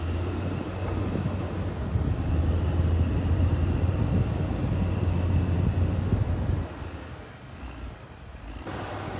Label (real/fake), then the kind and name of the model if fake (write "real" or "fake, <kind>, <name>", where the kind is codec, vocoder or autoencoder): real